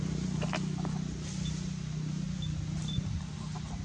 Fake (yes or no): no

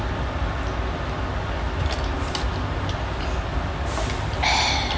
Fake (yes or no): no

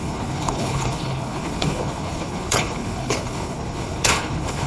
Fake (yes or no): yes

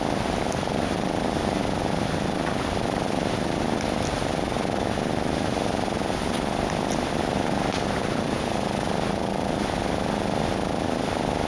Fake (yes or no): no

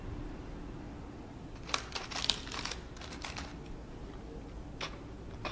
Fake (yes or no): no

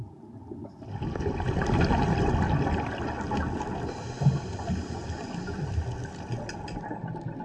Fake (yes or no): no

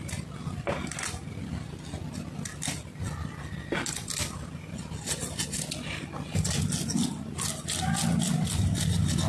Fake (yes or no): no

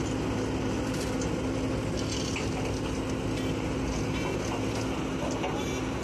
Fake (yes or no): no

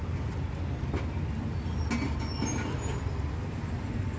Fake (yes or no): no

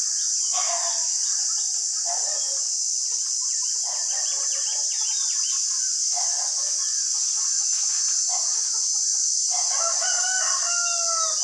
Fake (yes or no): no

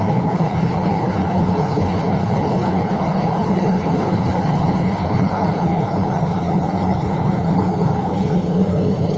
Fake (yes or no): yes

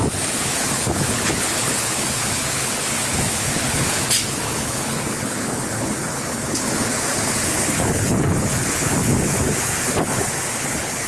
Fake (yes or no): yes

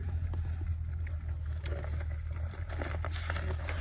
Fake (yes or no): no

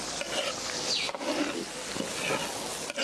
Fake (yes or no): no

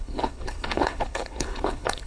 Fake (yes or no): yes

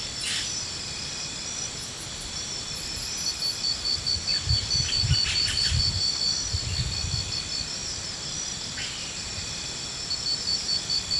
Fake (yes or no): no